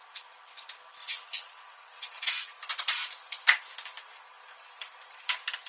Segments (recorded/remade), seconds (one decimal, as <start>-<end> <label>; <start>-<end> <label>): 0.0-1.0 recorded; 1.0-2.3 remade; 2.3-5.7 recorded